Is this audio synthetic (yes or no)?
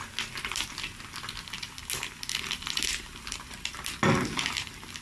no